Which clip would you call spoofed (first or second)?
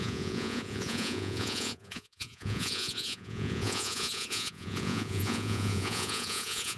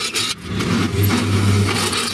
first